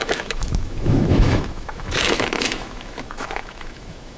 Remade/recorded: remade